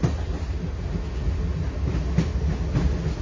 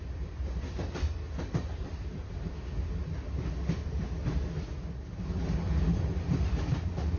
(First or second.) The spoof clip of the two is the second